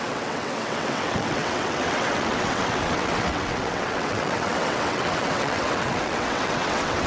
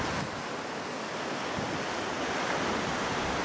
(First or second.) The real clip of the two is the second